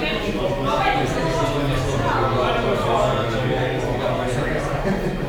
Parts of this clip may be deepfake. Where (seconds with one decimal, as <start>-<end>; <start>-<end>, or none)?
0.0-1.2; 4.4-5.3